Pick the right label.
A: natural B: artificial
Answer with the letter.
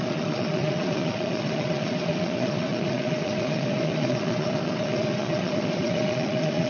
B